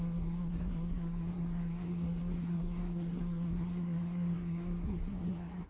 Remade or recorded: remade